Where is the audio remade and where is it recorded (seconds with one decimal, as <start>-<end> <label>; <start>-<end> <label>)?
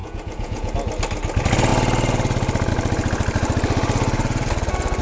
0.0-0.7 remade; 0.7-5.0 recorded